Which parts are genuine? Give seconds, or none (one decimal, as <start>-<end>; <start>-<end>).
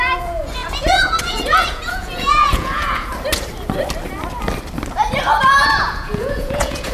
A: 3.1-5.7